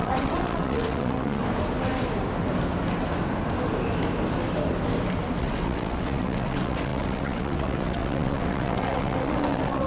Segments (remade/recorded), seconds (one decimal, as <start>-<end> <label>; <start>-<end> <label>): 0.0-1.4 remade; 1.4-5.4 recorded; 5.4-9.9 remade